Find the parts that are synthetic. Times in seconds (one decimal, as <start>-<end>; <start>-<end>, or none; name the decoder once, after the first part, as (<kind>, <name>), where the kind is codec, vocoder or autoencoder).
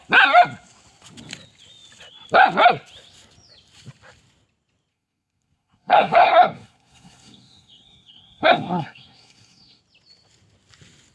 4.9-9.8 (codec, SNAC)